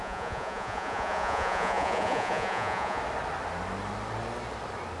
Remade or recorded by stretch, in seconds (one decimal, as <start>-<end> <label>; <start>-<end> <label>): 0.0-3.0 remade; 3.0-5.0 recorded